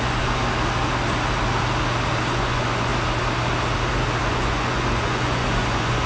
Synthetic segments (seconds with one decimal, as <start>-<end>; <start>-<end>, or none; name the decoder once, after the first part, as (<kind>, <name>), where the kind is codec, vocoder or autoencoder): 0.0-0.4 (vocoder, Vocos); 2.3-2.9; 4.2-6.1